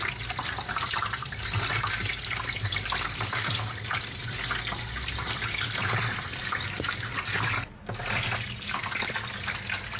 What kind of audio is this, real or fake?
real